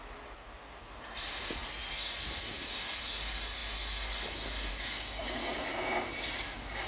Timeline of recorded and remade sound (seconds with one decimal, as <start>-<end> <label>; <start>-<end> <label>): 0.0-6.9 recorded